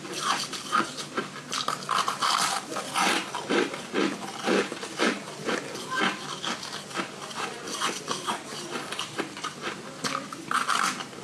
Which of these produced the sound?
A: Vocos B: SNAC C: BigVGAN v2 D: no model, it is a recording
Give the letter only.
D